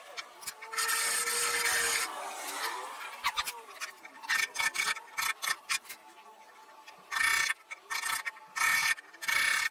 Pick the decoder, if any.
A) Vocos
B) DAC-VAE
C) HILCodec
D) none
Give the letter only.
D